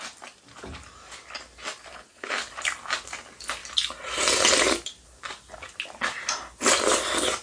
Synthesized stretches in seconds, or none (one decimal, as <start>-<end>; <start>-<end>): 1.9-2.5